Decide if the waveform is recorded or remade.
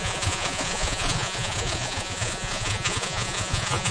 remade